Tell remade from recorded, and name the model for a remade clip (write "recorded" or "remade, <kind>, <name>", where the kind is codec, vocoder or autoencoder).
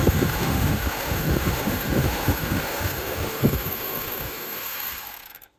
remade, autoencoder, DAC-VAE